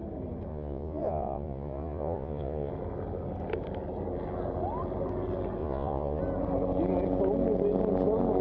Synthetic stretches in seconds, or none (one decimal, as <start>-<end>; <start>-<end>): 0.5-2.7; 5.6-6.2